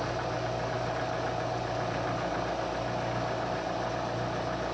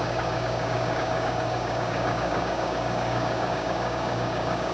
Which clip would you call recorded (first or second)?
first